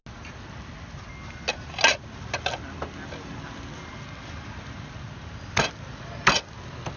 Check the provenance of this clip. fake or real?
real